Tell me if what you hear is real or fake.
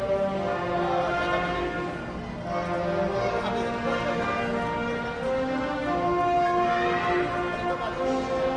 real